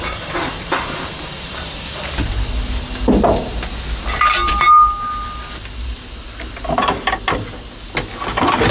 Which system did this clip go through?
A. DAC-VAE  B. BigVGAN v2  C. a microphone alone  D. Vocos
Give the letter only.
C